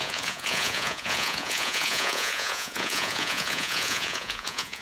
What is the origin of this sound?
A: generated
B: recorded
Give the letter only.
A